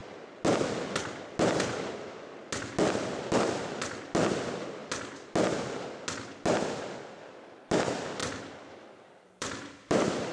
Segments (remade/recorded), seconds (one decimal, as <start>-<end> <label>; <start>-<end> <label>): 0.0-8.2 recorded; 8.2-10.3 remade